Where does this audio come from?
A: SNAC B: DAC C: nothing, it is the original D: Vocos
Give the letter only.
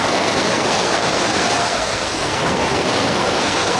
A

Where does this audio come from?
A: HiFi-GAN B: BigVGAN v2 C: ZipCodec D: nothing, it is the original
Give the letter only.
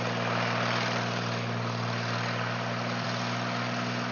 D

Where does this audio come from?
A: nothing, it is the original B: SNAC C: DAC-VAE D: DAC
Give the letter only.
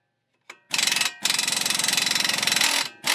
A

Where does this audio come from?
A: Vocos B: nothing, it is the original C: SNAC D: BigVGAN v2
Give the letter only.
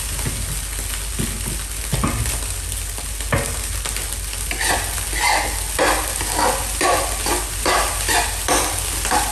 B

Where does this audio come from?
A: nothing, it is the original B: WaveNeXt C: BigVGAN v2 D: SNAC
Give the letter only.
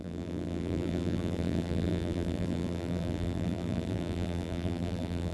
C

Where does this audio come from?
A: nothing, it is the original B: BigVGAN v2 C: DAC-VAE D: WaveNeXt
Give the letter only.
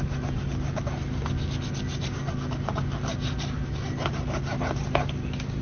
A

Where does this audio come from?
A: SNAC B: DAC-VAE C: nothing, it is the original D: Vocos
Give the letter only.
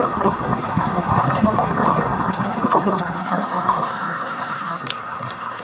A